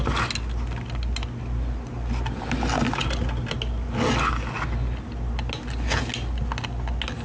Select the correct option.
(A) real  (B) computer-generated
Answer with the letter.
A